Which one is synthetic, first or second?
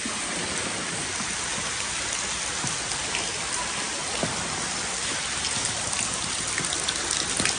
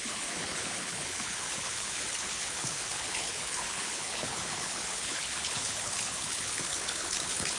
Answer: second